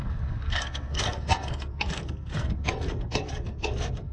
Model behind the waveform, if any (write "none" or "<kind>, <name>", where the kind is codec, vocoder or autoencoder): codec, SNAC